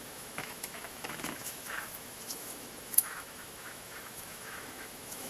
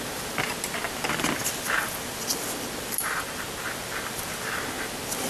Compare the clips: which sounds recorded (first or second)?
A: second